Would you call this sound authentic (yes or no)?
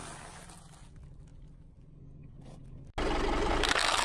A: yes